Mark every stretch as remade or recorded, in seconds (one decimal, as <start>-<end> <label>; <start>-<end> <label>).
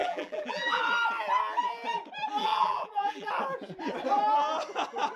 0.0-0.8 remade; 0.8-2.4 recorded; 2.4-3.3 remade; 3.3-5.2 recorded